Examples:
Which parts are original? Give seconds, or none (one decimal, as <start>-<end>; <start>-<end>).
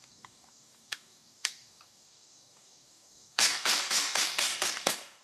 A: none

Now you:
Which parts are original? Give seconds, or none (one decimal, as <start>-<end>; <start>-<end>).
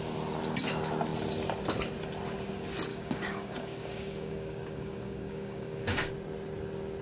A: 0.0-2.9; 6.1-7.0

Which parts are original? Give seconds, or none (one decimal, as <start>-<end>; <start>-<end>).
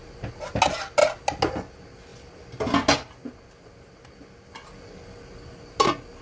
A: 0.0-6.2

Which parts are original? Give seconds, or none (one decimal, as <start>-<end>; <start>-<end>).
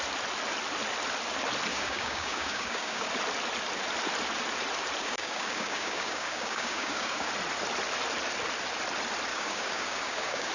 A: 0.0-1.7; 3.1-5.0; 7.3-9.3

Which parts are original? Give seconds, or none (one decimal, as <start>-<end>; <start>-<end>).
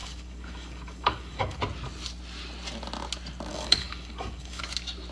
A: 1.6-3.5; 4.6-5.1